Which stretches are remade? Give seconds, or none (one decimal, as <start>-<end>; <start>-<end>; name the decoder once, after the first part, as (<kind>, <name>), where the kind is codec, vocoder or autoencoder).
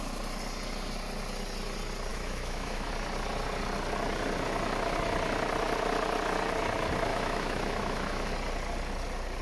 2.1-2.9 (autoencoder, DAC-VAE); 7.1-8.3